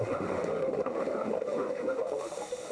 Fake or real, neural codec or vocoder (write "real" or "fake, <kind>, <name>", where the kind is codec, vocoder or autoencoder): fake, autoencoder, DAC-VAE